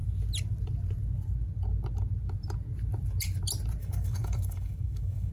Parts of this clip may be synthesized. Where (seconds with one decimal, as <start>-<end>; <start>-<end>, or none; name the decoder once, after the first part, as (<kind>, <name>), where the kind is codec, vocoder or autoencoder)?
3.8-5.3 (codec, DAC)